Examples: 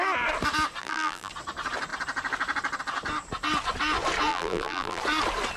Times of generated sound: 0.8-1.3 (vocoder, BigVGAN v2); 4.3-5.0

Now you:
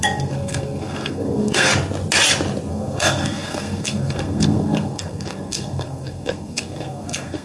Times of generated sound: 0.0-1.7 (codec, SNAC); 2.7-7.4

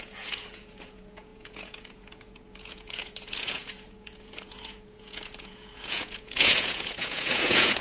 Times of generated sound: 0.0-7.8 (vocoder, Vocos)

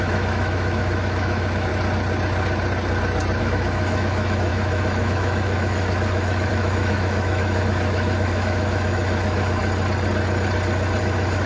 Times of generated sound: 0.0-1.7 (autoencoder, DAC-VAE); 3.4-9.6; 11.0-11.5

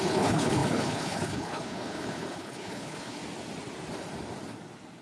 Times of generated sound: 0.0-3.2 (codec, HILCodec)